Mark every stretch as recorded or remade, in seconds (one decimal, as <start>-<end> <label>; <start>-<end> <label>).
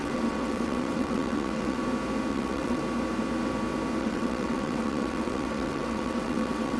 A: 0.0-1.8 remade; 1.8-2.3 recorded; 2.3-2.8 remade; 2.8-4.0 recorded; 4.0-6.8 remade